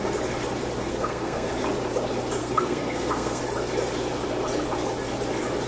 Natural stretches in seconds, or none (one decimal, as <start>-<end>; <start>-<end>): 0.0-0.9; 1.5-2.4; 3.4-5.7